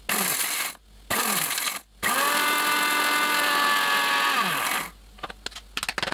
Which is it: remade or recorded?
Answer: recorded